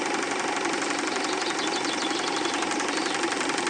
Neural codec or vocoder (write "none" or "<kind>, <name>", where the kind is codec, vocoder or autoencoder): none